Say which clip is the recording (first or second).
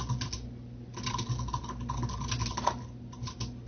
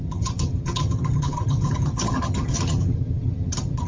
first